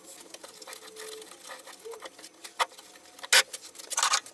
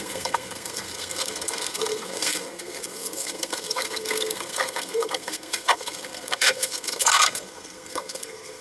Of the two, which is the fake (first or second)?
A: second